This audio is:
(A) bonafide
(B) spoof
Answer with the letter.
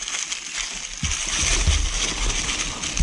A